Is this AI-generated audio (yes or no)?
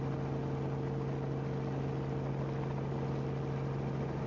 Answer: no